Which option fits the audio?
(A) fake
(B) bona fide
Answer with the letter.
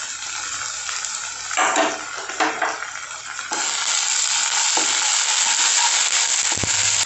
B